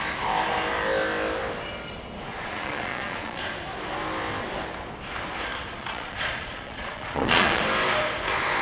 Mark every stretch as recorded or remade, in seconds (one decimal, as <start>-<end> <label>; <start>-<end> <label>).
0.0-2.3 recorded; 2.3-3.4 remade; 3.4-5.8 recorded; 5.8-7.6 remade; 7.6-8.6 recorded

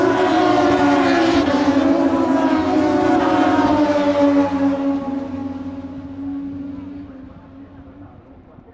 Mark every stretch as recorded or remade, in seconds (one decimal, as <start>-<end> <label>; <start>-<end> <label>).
0.0-2.6 remade; 2.6-3.2 recorded; 3.2-5.4 remade; 5.4-7.3 recorded; 7.3-8.7 remade